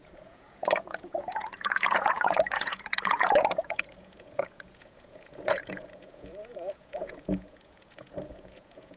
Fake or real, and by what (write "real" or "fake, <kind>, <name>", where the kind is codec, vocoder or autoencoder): fake, vocoder, Vocos